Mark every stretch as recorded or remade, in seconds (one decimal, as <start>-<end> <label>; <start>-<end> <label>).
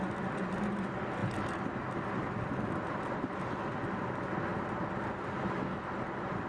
0.0-6.5 recorded